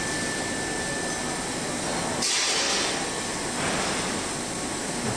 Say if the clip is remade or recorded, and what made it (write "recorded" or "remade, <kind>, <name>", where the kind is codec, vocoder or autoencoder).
recorded